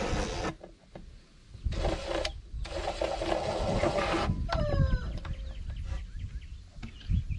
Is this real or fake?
real